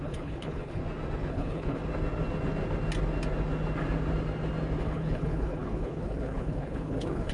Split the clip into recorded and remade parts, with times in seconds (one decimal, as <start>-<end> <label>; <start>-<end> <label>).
0.0-0.8 remade; 0.8-1.3 recorded; 1.3-1.8 remade; 1.8-4.8 recorded; 4.8-7.3 remade